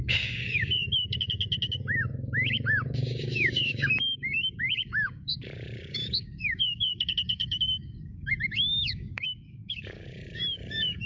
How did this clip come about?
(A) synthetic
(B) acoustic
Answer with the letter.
A